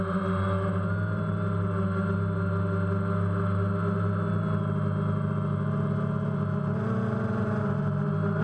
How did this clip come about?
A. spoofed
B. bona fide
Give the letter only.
B